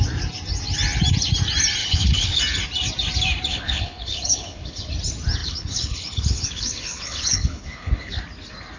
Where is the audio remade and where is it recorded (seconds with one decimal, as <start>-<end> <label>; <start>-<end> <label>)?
0.0-1.8 recorded; 1.8-2.4 remade; 2.4-3.5 recorded; 3.5-4.9 remade; 4.9-5.4 recorded; 5.4-8.2 remade; 8.2-8.8 recorded